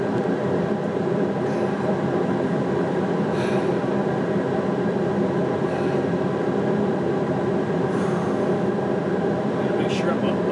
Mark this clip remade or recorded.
remade